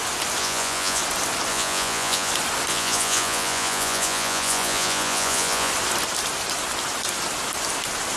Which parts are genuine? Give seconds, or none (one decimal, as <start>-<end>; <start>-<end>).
0.0-0.4; 1.0-1.5; 2.3-2.7; 5.7-8.2